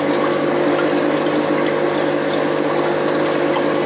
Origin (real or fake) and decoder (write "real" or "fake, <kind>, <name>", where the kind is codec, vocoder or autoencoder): real